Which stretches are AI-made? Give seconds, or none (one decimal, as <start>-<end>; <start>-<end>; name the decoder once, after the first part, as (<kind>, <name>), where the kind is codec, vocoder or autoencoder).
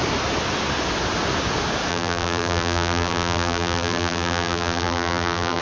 1.9-5.6 (vocoder, BigVGAN v2)